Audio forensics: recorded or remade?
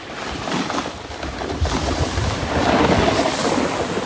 recorded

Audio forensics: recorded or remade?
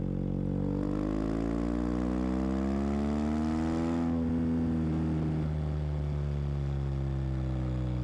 recorded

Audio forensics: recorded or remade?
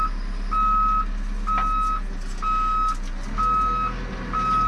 recorded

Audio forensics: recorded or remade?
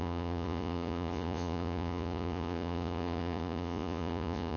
remade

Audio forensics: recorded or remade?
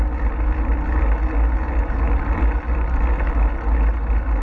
recorded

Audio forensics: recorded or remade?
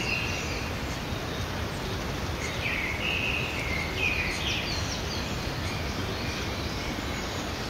recorded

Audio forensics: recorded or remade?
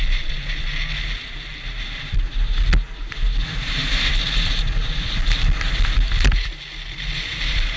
recorded